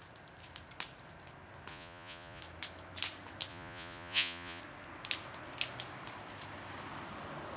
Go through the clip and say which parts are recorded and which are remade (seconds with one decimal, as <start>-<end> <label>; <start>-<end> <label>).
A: 0.0-1.7 recorded; 1.7-2.4 remade; 2.4-3.5 recorded; 3.5-4.6 remade; 4.6-7.6 recorded

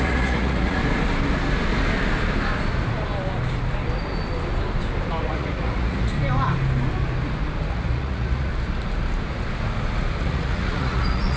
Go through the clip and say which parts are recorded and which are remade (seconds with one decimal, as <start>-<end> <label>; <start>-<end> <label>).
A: 0.0-0.8 remade; 0.8-5.2 recorded; 5.2-6.1 remade; 6.1-7.7 recorded; 7.7-8.5 remade; 8.5-10.2 recorded; 10.2-11.4 remade